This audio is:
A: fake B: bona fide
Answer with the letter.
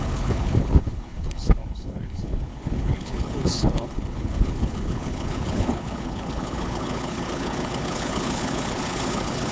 A